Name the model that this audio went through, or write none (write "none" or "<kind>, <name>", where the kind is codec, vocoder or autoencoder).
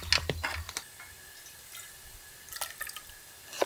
none